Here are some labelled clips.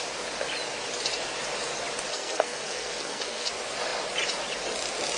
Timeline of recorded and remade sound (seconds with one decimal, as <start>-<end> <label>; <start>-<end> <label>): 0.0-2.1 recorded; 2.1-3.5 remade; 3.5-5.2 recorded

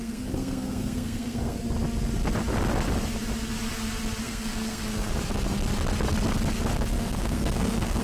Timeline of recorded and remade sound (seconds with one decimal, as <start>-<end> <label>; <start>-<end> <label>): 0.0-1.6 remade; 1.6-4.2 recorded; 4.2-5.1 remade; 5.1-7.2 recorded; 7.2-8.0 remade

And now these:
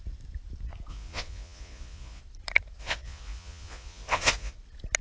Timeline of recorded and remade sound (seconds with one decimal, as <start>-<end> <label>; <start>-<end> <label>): 0.0-0.9 recorded; 0.9-2.2 remade; 2.2-2.8 recorded; 2.8-4.5 remade; 4.5-5.0 recorded

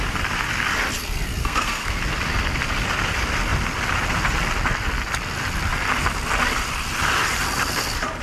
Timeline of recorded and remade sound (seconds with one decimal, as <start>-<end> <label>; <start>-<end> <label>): 0.0-1.4 recorded; 1.4-2.0 remade; 2.0-8.2 recorded

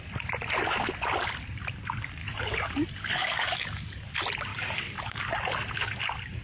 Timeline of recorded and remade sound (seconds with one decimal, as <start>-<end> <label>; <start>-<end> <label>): 0.0-2.2 recorded; 2.2-4.1 remade; 4.1-4.5 recorded; 4.5-5.3 remade; 5.3-6.4 recorded

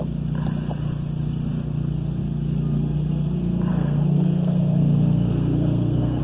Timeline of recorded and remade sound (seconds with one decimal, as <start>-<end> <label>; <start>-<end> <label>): 0.0-3.7 recorded; 3.7-6.2 remade